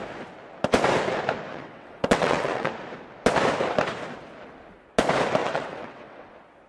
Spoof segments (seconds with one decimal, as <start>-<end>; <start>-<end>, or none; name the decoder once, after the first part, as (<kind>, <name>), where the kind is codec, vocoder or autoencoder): 1.5-2.7 (vocoder, WaveNeXt); 5.4-6.3